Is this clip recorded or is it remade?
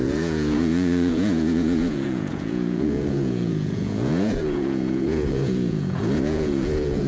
remade